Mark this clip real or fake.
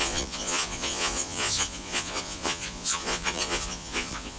fake